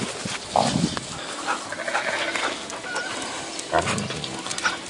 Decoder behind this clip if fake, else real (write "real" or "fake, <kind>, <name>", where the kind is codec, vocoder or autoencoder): real